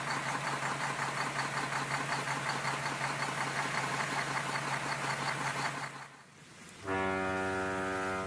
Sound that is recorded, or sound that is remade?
recorded